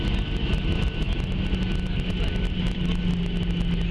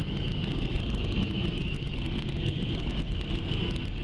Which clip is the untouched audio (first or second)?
first